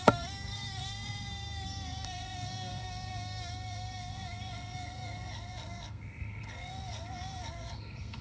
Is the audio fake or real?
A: fake